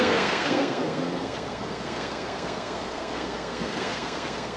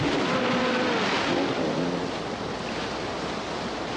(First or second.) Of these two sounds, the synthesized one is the first